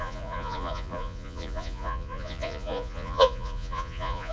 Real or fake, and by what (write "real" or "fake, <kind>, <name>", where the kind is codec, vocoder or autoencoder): fake, vocoder, Vocos